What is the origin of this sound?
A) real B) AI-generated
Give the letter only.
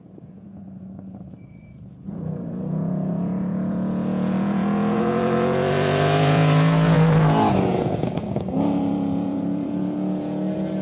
B